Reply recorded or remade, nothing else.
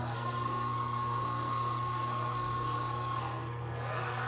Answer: remade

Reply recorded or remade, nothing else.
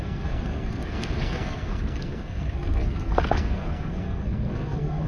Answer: remade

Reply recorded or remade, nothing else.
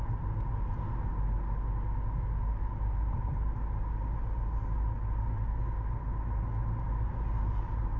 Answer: recorded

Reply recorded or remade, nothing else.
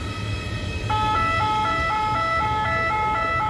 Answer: recorded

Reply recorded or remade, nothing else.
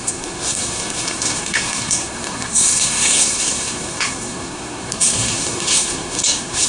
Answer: remade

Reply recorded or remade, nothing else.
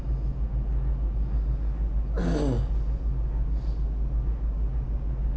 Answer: recorded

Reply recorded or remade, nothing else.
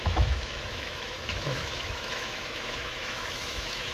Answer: remade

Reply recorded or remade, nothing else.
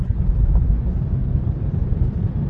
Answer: recorded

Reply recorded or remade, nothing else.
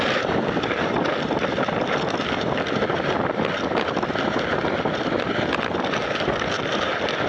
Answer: recorded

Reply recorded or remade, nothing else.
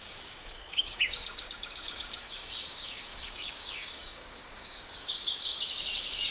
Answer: remade